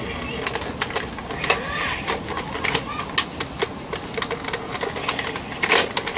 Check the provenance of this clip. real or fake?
real